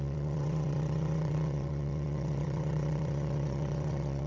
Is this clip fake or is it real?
fake